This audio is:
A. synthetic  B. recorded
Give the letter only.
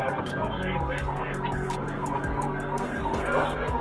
A